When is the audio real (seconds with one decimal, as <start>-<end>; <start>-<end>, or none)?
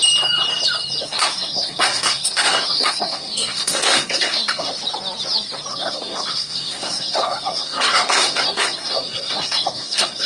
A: 0.0-1.0; 4.7-5.7